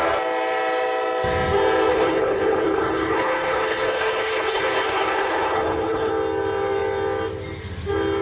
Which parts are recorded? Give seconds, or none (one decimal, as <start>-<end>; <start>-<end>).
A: 0.0-1.9; 6.1-8.2